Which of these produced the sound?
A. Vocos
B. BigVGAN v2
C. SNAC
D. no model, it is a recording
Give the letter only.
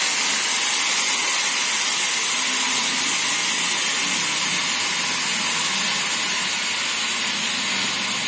D